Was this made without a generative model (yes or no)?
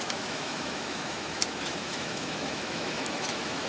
no